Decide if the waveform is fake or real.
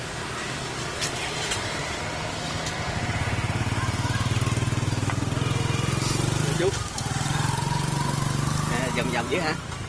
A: real